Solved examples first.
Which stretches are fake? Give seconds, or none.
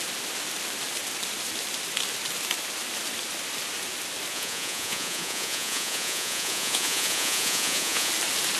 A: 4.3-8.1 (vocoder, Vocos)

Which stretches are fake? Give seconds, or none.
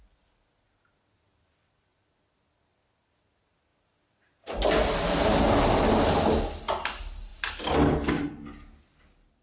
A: none